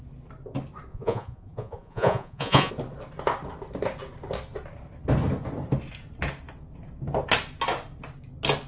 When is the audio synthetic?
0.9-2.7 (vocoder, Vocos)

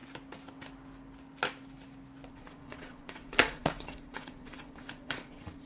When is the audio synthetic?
2.3-5.7 (vocoder, Vocos)

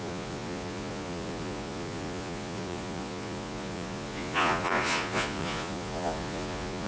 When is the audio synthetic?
0.0-6.9 (vocoder, Vocos)

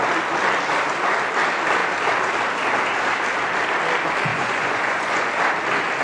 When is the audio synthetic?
4.3-5.3 (vocoder, Vocos)

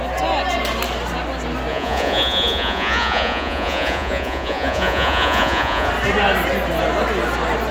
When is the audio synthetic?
1.7-5.9 (vocoder, Vocos)